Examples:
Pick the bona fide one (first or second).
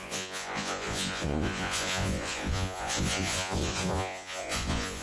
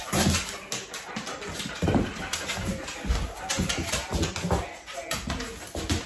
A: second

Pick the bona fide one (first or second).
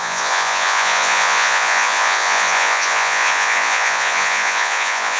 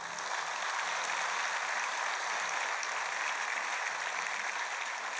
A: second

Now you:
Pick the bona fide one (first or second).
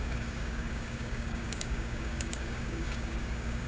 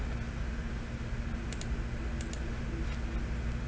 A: second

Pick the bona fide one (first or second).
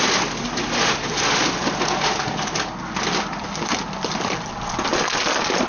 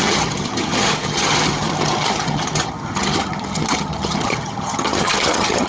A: first